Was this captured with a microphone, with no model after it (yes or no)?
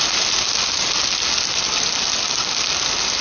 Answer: yes